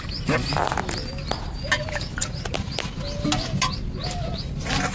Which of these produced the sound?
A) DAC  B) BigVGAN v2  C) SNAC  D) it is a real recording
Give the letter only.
D